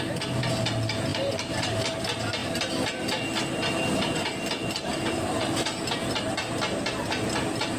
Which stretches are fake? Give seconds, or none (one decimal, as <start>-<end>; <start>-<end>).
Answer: 1.1-1.8